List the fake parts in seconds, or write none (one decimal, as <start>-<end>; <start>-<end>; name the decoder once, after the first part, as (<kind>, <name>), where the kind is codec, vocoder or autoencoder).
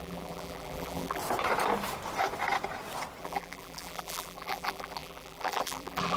0.0-1.2 (vocoder, BigVGAN v2); 3.2-6.2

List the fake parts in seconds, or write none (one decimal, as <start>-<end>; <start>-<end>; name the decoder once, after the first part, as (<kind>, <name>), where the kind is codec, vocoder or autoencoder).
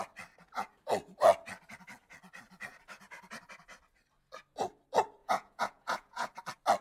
5.2-6.3 (vocoder, Vocos)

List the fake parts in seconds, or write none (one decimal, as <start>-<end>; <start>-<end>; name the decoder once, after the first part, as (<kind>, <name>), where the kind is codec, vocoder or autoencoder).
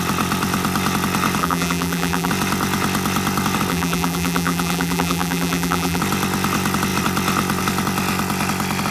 1.4-2.3 (vocoder, BigVGAN v2); 3.7-6.0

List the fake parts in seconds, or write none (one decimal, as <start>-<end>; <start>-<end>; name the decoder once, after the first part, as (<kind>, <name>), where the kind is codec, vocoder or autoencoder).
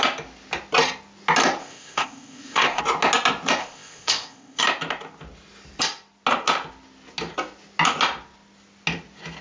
1.6-2.8 (codec, ZipCodec); 3.6-4.6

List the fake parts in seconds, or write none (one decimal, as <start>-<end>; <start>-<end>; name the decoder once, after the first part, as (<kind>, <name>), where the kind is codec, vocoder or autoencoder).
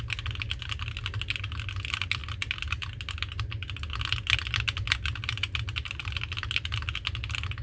none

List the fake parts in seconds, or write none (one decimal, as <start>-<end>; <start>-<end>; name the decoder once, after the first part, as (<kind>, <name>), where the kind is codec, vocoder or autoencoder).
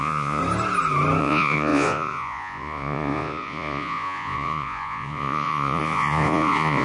0.0-0.4 (vocoder, Vocos); 1.2-6.8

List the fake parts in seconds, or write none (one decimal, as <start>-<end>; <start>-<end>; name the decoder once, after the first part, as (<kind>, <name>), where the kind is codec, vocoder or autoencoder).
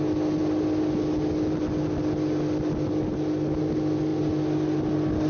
none